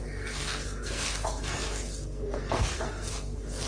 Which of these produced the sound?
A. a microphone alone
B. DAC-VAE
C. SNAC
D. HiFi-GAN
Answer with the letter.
C